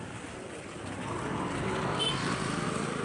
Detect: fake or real real